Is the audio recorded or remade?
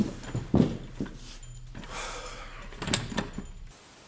recorded